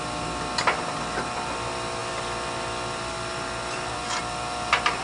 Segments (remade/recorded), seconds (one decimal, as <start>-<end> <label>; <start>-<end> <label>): 0.0-5.0 recorded